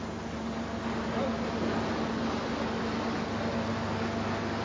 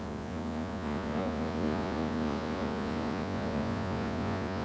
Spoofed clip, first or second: second